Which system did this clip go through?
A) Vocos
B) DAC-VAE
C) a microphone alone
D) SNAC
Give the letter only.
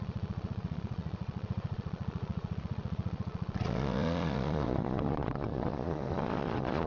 A